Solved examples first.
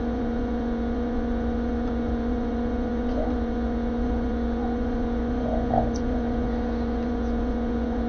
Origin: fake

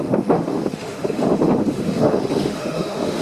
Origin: fake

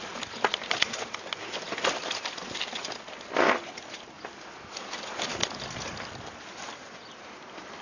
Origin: real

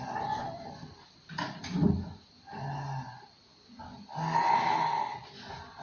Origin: real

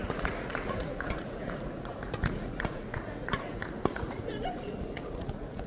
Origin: fake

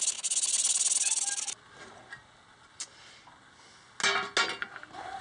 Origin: real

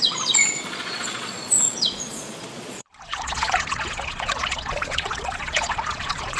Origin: fake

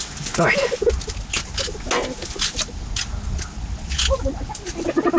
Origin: real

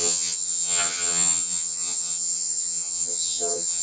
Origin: fake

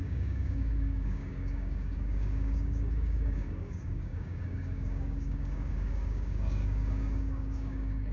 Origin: fake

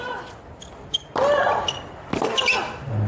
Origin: real